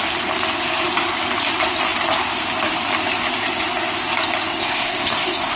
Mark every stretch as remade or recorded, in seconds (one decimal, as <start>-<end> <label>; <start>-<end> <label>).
0.0-4.6 recorded; 4.6-5.6 remade